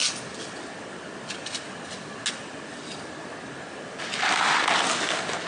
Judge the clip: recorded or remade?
recorded